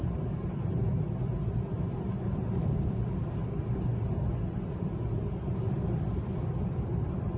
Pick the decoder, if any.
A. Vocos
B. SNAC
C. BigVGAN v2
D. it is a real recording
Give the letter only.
D